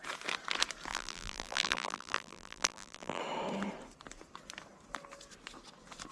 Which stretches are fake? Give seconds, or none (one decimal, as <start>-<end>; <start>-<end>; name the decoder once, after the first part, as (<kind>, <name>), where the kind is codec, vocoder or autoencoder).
0.9-3.2 (vocoder, BigVGAN v2)